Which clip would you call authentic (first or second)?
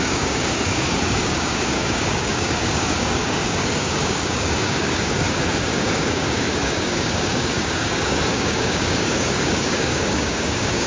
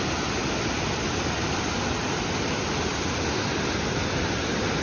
second